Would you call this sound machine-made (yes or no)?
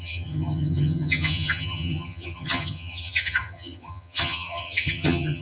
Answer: yes